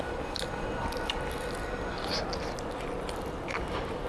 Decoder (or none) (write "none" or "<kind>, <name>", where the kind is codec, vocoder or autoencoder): none